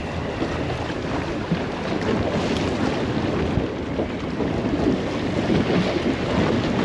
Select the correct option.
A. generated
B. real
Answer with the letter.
B